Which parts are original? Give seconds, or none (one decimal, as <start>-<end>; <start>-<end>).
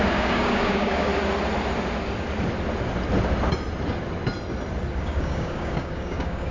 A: 1.1-5.0